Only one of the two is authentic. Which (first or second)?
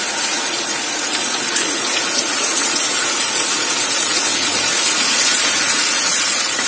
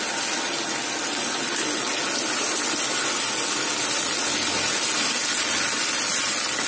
second